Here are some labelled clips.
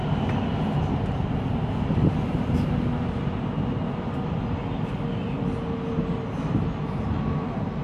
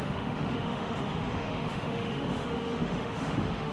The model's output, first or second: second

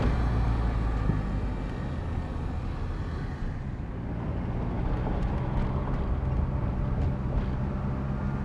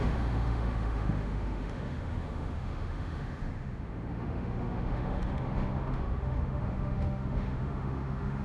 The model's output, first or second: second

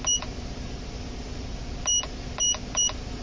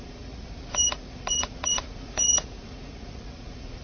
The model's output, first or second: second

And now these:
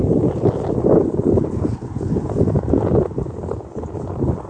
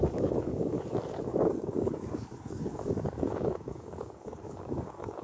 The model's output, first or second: second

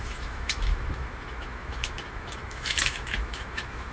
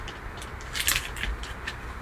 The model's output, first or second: first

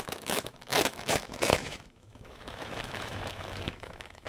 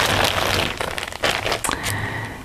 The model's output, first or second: first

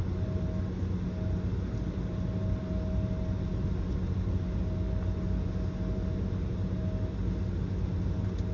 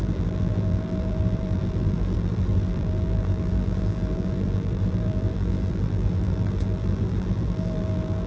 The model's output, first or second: second